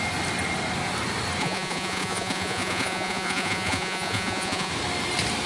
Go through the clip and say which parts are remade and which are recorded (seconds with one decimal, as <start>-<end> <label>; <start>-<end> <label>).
0.0-1.4 recorded; 1.4-4.7 remade; 4.7-5.5 recorded